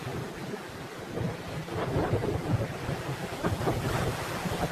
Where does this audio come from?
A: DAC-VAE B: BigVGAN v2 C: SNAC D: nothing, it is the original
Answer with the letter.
D